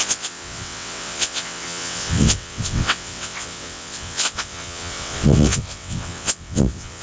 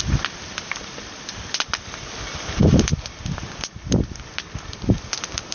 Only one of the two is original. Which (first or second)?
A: second